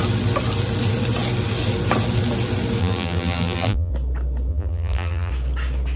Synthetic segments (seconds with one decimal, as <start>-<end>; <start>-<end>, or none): 2.8-3.9; 4.5-5.3